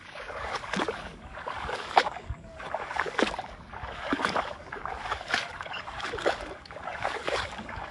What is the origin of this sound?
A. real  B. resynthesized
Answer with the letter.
B